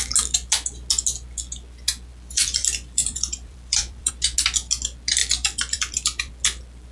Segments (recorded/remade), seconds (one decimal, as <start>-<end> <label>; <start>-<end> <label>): 0.0-2.1 recorded; 2.1-4.1 remade; 4.1-5.2 recorded; 5.2-6.3 remade; 6.3-6.9 recorded